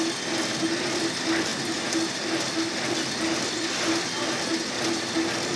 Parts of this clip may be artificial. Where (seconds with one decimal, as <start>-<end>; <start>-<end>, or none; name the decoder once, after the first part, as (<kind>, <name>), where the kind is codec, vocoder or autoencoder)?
none

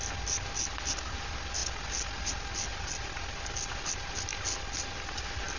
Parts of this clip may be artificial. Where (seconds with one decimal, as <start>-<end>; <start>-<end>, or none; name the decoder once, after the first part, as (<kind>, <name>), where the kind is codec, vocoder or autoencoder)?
none

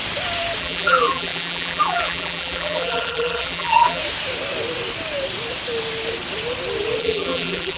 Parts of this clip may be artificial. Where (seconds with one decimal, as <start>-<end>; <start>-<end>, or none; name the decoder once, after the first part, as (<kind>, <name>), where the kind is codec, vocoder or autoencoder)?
0.6-4.0 (vocoder, BigVGAN v2); 7.0-7.8

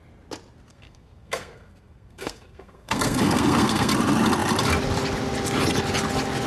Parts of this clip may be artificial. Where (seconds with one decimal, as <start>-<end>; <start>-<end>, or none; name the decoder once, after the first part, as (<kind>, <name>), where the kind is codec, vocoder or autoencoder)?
0.7-3.9 (codec, SNAC)

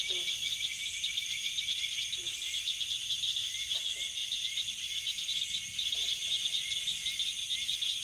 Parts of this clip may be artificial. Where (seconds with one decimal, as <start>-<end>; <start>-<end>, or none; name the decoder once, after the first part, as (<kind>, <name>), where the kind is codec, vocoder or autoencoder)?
4.2-5.0 (vocoder, BigVGAN v2)

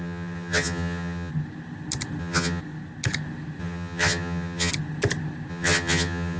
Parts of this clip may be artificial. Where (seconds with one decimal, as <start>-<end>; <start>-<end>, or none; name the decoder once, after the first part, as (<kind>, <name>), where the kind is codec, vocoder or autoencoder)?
0.0-1.3 (vocoder, HiFi-GAN); 2.2-2.6; 3.6-4.7; 5.5-6.4

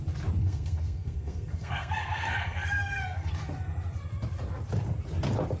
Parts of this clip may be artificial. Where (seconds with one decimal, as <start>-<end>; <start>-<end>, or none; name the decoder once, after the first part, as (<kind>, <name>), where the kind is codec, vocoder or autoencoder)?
0.4-3.3 (codec, SNAC)

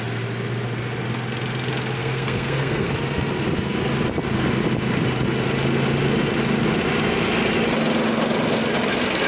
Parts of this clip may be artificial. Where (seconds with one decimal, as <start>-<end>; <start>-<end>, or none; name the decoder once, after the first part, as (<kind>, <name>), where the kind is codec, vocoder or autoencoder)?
2.0-2.9 (codec, SNAC)